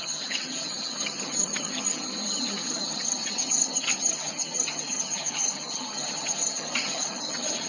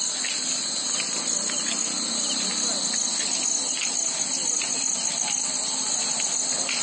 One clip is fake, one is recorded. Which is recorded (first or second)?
second